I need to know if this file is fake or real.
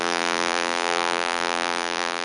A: fake